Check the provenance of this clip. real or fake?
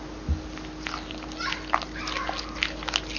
real